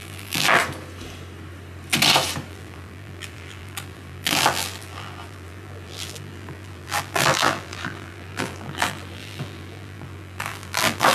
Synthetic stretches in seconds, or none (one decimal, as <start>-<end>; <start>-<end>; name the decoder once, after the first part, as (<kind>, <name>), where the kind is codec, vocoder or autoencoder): 0.0-0.6 (vocoder, BigVGAN v2); 2.5-11.1